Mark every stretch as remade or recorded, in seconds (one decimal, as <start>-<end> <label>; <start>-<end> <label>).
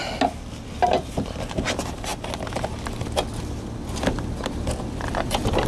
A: 0.0-0.7 recorded; 0.7-2.1 remade; 2.1-4.5 recorded; 4.5-5.7 remade